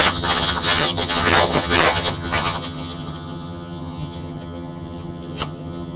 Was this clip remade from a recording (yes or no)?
yes